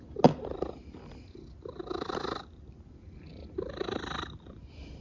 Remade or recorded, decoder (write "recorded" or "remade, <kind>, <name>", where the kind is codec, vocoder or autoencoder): recorded